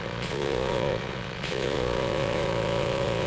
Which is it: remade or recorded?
remade